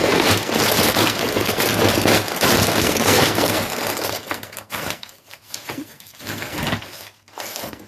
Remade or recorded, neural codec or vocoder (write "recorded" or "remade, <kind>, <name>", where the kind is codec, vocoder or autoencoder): remade, codec, SNAC